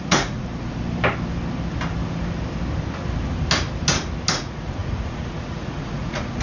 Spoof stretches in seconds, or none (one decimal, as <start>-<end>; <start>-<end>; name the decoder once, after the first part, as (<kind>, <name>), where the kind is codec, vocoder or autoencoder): 0.0-0.5 (vocoder, Vocos); 4.3-6.4